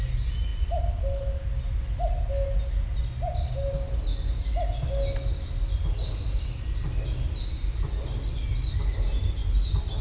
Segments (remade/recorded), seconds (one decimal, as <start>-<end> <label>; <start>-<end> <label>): 0.0-10.0 recorded